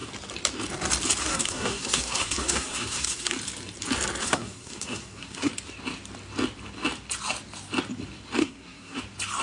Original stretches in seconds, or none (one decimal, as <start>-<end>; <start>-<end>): 0.0-1.2; 3.3-4.2; 5.5-8.4; 9.0-9.4